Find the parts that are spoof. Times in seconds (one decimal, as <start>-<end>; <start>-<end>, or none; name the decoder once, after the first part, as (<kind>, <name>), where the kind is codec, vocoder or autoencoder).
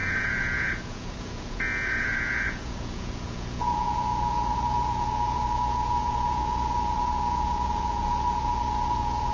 0.0-9.3 (vocoder, Vocos)